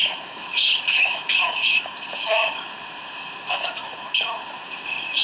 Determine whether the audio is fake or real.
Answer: fake